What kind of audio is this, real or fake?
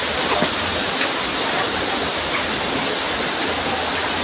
real